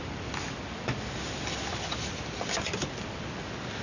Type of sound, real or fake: real